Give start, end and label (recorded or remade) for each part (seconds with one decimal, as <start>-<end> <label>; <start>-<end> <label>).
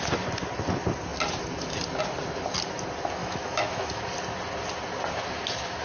0.0-3.2 recorded; 3.2-4.0 remade; 4.0-5.8 recorded